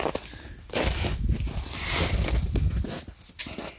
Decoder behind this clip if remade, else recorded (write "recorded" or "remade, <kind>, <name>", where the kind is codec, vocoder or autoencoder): recorded